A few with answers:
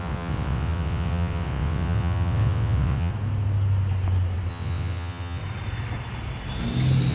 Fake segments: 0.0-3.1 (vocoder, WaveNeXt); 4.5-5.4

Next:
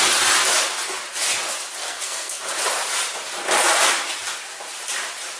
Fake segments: 1.8-2.4 (codec, SNAC)

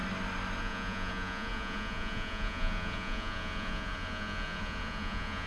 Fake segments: 0.6-5.5 (vocoder, Vocos)

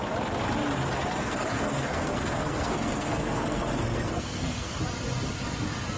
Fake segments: 1.2-4.8 (codec, SNAC)

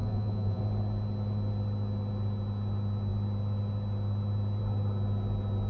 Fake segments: 0.0-0.6 (vocoder, Vocos)

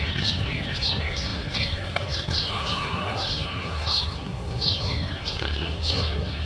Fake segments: 0.0-6.5 (codec, SNAC)

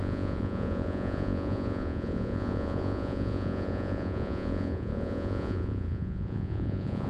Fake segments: 0.0-7.1 (vocoder, Vocos)

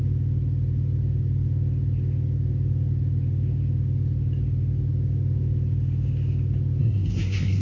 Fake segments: 6.8-7.6 (codec, SNAC)